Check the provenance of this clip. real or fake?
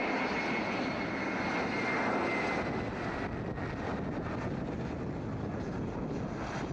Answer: real